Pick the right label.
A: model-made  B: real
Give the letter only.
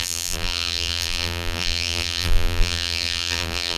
A